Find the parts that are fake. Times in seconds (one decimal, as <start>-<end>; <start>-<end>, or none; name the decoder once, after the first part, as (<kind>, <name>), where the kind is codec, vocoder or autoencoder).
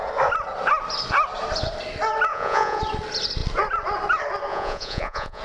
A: 2.3-2.8 (vocoder, Vocos); 4.5-5.4